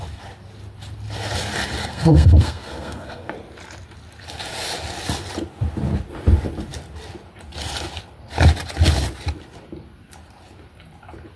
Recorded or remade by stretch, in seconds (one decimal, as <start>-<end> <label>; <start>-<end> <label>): 0.0-1.8 recorded; 1.8-3.3 remade; 3.3-11.4 recorded